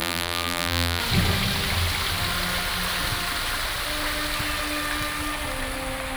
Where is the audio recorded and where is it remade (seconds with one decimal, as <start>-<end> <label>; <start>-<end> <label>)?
0.0-1.0 remade; 1.0-6.2 recorded